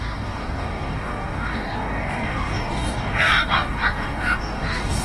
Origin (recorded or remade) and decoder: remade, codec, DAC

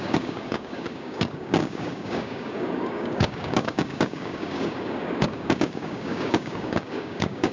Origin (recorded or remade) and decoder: remade, codec, DAC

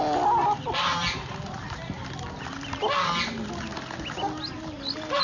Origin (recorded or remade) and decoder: recorded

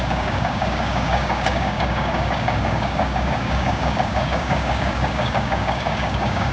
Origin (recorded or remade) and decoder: remade, codec, DAC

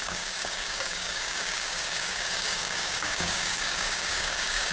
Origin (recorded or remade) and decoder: remade, codec, DAC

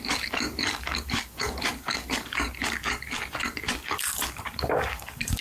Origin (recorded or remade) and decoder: remade, codec, DAC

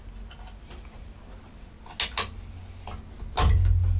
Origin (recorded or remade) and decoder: recorded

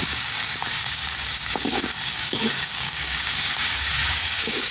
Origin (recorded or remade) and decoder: remade, codec, DAC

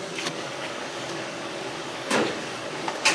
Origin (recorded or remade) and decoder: remade, codec, DAC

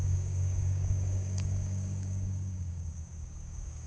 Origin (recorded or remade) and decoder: remade, codec, DAC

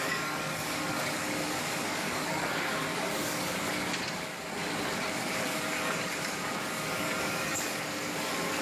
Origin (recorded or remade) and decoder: remade, codec, DAC